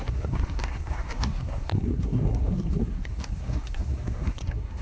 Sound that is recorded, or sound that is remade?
remade